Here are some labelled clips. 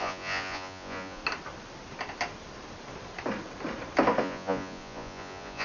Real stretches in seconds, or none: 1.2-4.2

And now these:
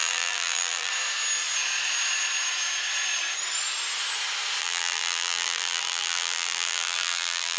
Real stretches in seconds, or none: 0.9-4.6

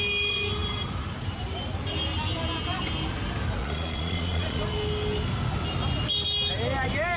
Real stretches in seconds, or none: 0.0-3.6; 4.6-7.2

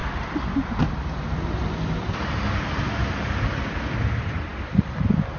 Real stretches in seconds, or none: 0.0-5.4

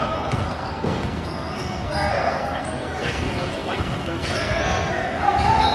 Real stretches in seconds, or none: none

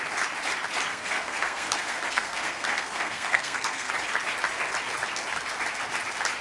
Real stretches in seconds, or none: 0.0-0.9; 3.9-6.4

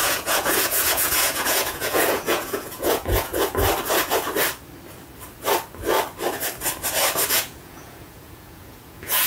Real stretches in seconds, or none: 3.3-7.3